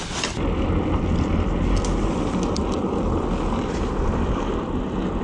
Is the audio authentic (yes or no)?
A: yes